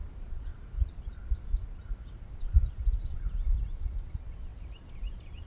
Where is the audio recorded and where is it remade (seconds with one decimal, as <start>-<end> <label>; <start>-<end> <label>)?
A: 0.0-0.5 recorded; 0.5-3.1 remade; 3.1-4.5 recorded; 4.5-5.5 remade

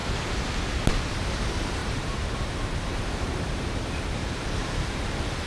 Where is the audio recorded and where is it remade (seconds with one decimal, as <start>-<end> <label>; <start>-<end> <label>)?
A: 0.0-1.1 recorded; 1.1-5.5 remade

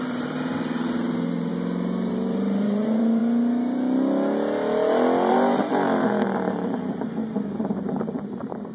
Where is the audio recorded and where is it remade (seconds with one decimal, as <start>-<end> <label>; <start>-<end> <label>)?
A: 0.0-1.5 remade; 1.5-2.1 recorded; 2.1-3.2 remade; 3.2-5.3 recorded; 5.3-8.7 remade